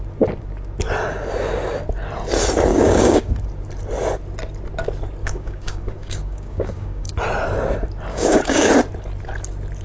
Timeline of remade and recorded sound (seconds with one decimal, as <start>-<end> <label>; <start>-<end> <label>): 0.0-2.7 recorded; 2.7-3.3 remade; 3.3-5.2 recorded; 5.2-7.1 remade; 7.1-8.1 recorded; 8.1-8.7 remade; 8.7-9.8 recorded